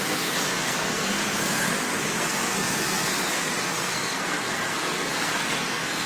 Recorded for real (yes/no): no